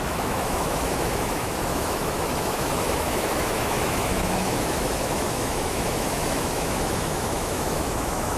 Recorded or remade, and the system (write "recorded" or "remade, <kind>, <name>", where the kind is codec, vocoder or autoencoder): remade, autoencoder, DAC-VAE